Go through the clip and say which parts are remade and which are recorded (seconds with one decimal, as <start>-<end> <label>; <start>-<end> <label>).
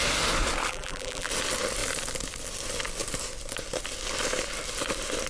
0.0-0.7 recorded; 0.7-1.3 remade; 1.3-5.3 recorded